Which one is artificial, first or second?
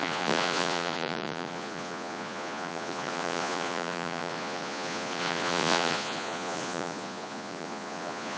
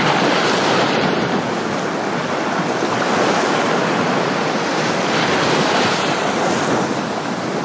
first